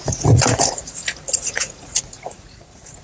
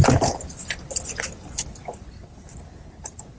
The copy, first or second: first